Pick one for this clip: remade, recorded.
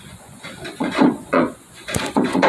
remade